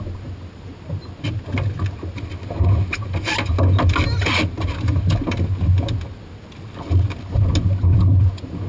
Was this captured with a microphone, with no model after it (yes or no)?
yes